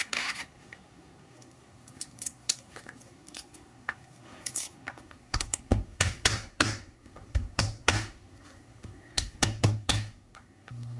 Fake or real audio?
fake